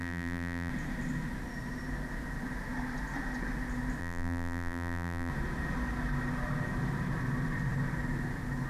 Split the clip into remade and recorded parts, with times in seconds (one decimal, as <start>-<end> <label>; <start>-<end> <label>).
0.0-0.7 remade; 0.7-4.0 recorded; 4.0-5.3 remade; 5.3-8.7 recorded